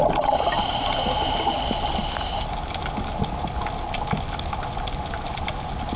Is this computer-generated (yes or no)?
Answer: no